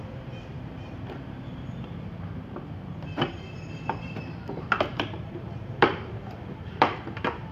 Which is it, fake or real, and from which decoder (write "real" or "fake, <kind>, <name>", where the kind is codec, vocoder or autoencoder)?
fake, vocoder, BigVGAN v2